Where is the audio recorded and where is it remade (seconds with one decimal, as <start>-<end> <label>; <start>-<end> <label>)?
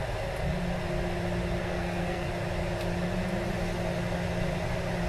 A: 0.0-1.6 recorded; 1.6-2.3 remade; 2.3-5.1 recorded